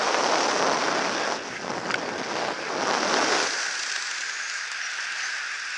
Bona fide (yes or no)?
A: yes